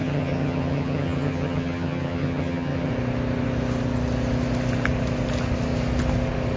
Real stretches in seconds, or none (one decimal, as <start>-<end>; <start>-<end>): 2.9-6.6